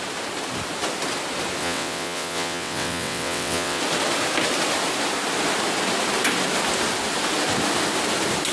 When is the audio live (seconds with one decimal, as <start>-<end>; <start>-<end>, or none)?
0.0-1.6; 3.8-8.5